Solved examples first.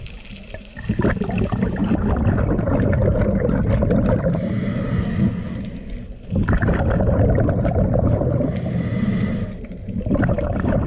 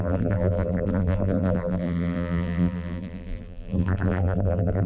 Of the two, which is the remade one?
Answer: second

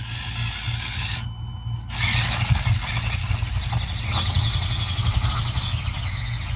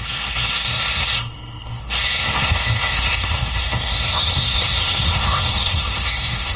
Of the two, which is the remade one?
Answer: second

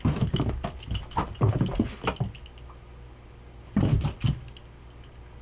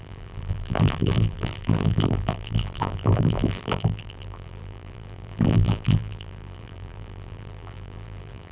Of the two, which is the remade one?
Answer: second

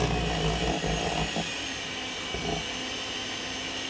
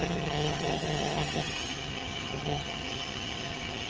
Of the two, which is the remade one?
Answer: second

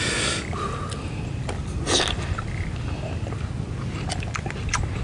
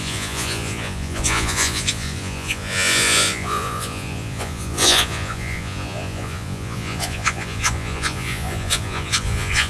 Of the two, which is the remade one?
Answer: second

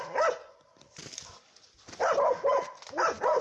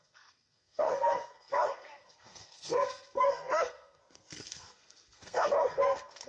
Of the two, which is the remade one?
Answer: second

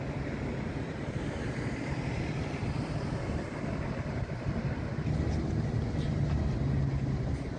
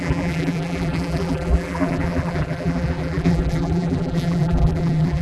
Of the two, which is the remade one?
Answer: second